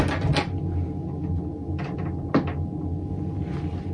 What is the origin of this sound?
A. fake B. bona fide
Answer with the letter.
B